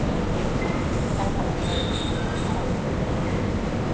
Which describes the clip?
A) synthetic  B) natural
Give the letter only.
B